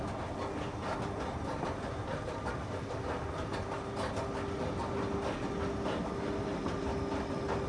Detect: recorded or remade recorded